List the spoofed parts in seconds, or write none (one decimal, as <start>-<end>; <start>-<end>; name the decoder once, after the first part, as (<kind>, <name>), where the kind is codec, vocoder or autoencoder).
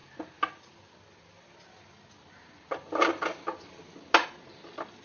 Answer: none